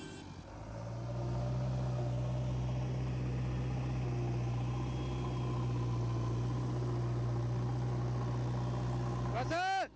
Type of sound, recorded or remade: recorded